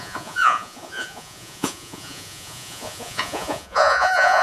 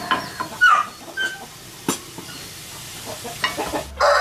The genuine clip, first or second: second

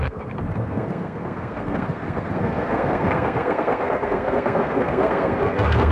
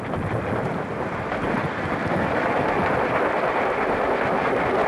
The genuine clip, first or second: second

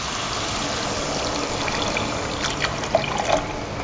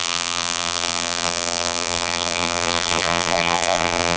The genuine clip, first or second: first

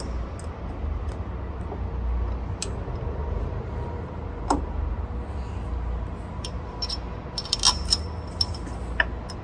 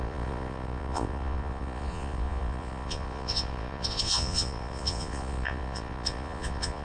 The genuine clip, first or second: first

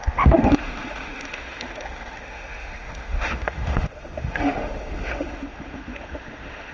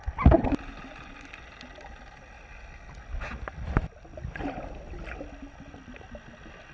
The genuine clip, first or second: second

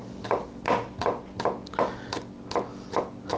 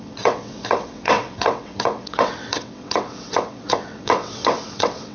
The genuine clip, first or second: first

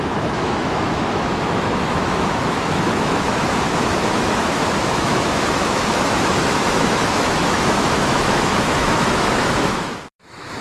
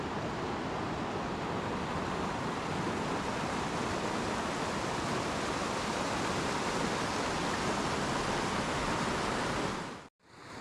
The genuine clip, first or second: second